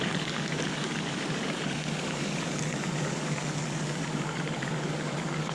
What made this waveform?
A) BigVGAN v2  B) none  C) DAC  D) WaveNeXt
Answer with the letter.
C